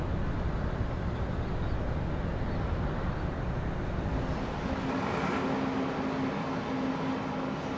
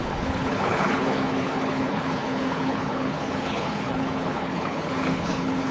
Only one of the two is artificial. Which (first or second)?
second